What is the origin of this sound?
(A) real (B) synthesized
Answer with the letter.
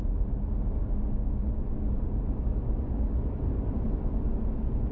A